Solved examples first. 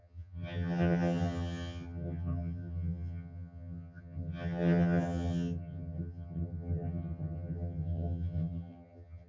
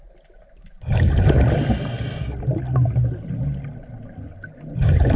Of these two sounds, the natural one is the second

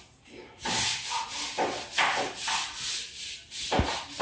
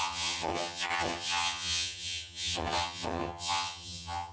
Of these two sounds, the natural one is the first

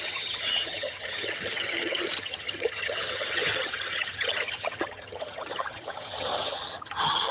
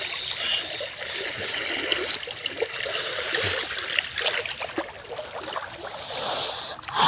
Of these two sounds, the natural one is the second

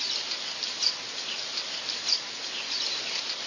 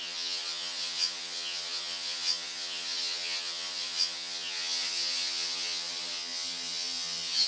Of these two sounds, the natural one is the first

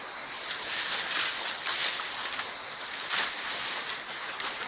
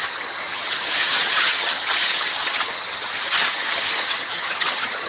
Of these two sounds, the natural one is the first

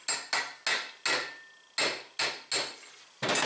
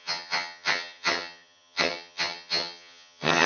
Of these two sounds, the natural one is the first